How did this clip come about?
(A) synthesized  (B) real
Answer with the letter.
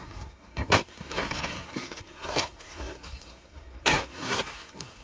A